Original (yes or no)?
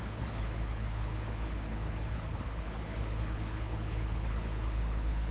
no